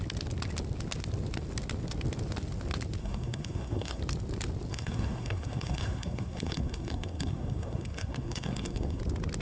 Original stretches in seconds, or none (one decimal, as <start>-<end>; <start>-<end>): 0.0-3.0; 4.0-4.7; 9.0-9.4